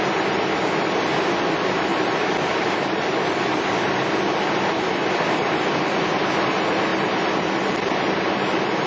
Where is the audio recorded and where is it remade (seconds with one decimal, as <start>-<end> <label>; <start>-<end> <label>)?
0.0-8.9 recorded